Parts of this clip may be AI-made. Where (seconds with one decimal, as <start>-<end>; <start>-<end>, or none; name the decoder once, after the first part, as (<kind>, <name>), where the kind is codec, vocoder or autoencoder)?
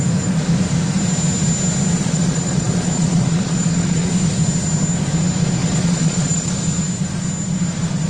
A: 2.0-4.1 (vocoder, Vocos); 5.6-6.5